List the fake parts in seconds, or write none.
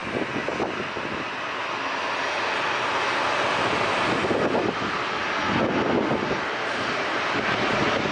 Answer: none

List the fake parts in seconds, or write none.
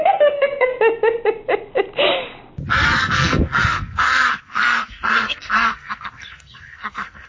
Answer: 0.0-0.7 (codec, SNAC); 3.0-7.3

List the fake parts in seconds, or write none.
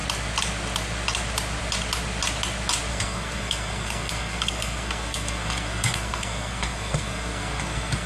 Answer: 2.9-8.1 (codec, SNAC)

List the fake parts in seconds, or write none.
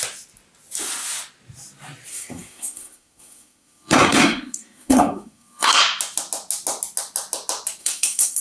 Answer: 2.1-5.8 (codec, SNAC); 7.8-8.4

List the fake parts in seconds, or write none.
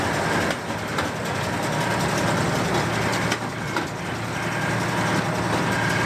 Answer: none